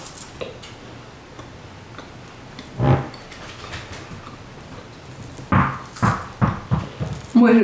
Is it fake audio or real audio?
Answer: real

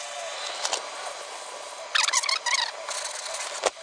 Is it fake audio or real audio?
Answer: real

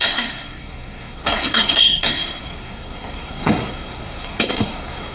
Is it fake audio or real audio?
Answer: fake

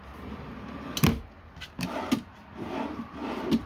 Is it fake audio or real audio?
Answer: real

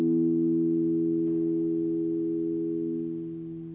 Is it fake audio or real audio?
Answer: real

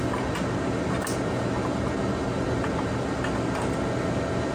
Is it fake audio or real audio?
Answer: real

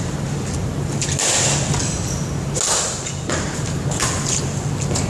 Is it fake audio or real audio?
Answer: real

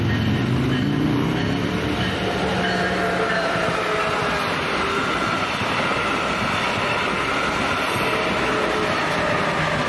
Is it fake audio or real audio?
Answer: real